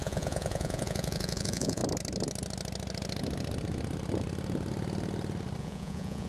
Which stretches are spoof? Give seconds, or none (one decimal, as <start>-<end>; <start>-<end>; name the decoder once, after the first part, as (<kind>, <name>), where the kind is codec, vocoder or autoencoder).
0.0-1.8 (vocoder, Vocos); 5.6-6.3